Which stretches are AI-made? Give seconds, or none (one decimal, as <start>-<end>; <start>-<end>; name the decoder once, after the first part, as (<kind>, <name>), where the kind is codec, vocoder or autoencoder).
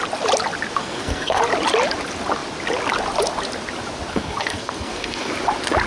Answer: 0.8-1.4 (codec, SNAC); 4.1-5.3